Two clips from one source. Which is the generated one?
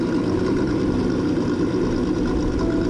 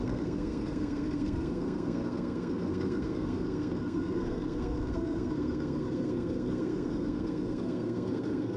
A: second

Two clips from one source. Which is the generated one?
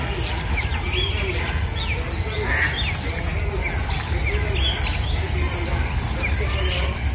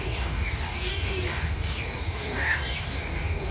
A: second